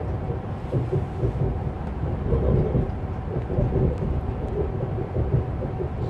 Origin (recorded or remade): recorded